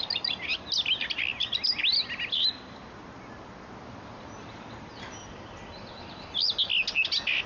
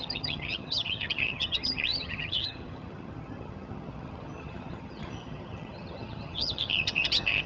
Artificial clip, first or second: second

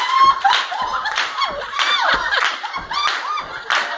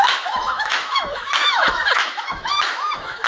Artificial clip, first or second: second